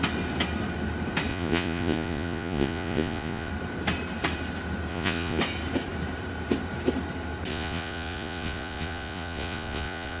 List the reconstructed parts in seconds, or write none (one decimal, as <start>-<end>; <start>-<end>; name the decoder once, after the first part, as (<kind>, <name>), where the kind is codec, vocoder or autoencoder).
1.3-3.5 (vocoder, Vocos); 4.9-5.4; 7.5-10.2